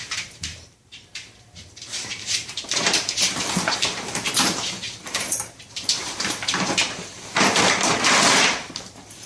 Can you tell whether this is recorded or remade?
remade